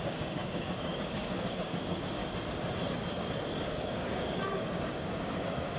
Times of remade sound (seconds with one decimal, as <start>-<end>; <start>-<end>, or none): 0.0-2.2; 3.6-5.8